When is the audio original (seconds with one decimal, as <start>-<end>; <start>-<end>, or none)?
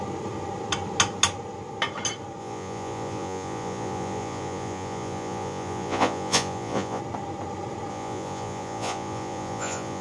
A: 0.0-2.4; 7.0-7.9